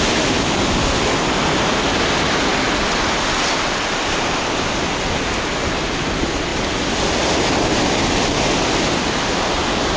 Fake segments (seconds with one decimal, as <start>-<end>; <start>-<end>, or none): none